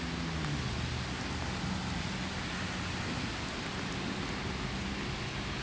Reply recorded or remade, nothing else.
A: recorded